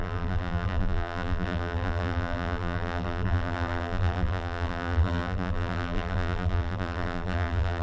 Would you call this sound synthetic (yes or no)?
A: yes